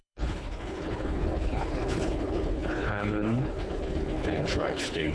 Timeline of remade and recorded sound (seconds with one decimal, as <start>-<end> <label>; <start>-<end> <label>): 0.0-5.1 remade